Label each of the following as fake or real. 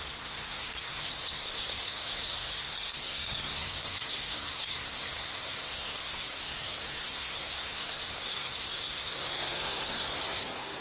fake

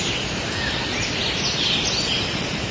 real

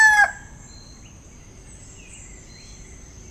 real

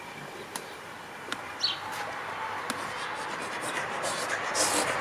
real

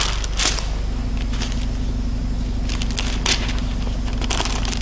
real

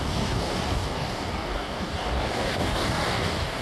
fake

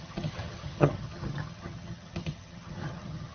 fake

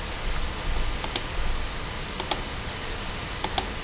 real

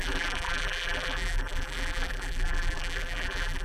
fake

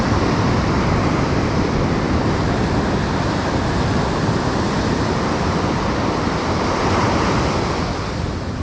real